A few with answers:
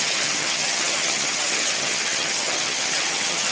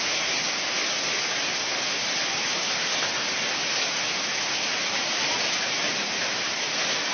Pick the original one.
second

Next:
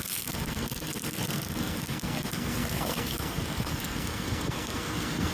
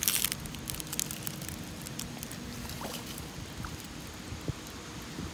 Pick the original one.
second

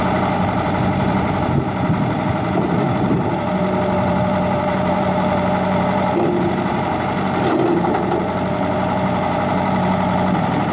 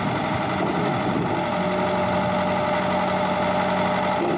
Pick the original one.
second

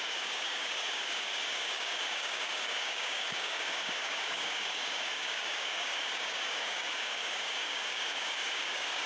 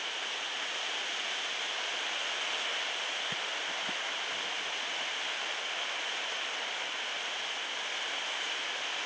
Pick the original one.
second